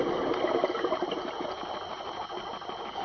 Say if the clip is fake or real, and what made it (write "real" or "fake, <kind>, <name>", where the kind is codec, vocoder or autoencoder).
real